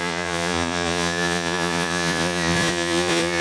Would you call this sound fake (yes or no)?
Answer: yes